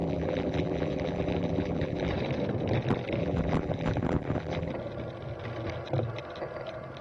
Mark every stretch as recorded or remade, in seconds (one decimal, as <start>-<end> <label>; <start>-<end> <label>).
0.0-2.1 remade; 2.1-3.2 recorded; 3.2-4.7 remade; 4.7-7.0 recorded